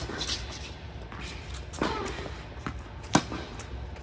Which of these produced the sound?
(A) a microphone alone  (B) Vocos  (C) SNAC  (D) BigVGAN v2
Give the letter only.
A